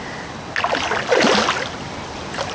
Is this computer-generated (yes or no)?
no